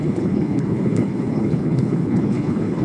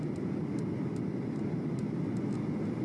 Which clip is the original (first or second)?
second